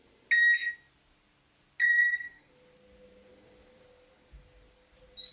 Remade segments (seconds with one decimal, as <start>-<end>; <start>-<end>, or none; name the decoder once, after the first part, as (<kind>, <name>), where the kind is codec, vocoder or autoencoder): 1.8-2.5 (codec, SNAC)